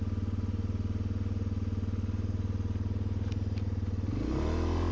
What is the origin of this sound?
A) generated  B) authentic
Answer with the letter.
B